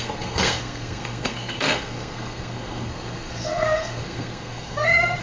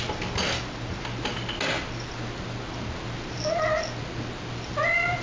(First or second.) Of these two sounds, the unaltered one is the second